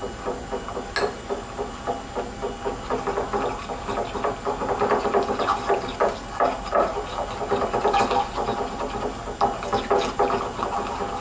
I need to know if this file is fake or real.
real